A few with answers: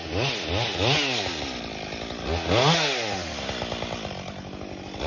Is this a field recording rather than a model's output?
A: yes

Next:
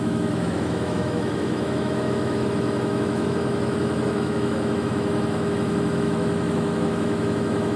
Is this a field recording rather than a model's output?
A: no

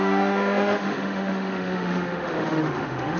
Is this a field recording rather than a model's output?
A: no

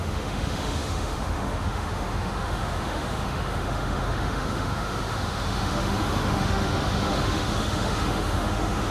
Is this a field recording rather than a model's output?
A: no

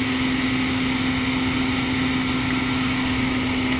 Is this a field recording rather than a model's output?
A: yes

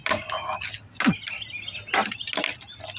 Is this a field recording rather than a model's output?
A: yes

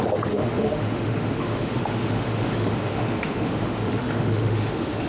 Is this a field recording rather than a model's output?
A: no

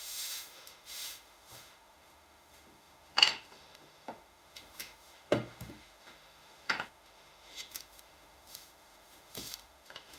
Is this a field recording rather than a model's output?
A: no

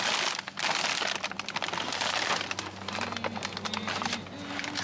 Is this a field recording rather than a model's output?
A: yes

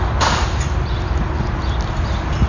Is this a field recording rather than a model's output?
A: yes